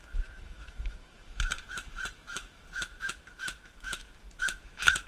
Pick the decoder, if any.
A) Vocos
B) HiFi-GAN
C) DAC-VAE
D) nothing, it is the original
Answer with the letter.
C